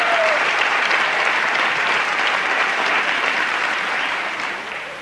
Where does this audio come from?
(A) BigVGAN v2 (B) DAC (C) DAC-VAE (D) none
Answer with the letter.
A